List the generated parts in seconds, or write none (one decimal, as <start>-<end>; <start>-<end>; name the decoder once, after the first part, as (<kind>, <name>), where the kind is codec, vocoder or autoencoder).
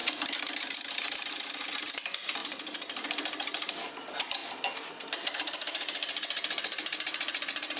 2.4-3.7 (vocoder, BigVGAN v2)